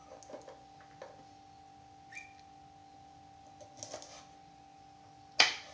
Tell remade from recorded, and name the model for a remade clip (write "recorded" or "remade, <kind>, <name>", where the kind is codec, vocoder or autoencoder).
recorded